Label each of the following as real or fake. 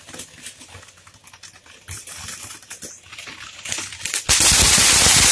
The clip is real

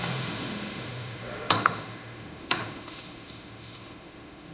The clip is fake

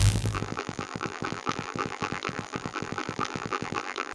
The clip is fake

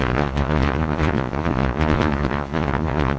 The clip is fake